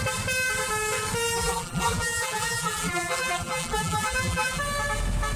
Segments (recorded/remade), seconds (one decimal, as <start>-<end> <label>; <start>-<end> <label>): 0.0-1.4 recorded; 1.4-4.6 remade; 4.6-5.4 recorded